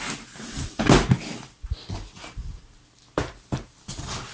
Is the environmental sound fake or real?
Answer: real